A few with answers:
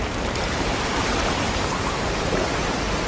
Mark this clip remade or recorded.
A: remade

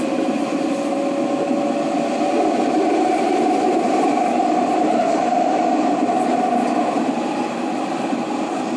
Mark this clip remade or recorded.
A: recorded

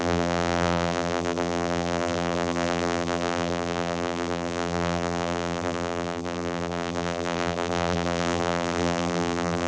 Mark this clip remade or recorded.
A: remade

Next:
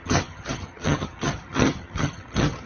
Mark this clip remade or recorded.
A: remade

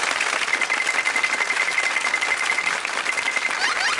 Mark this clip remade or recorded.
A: recorded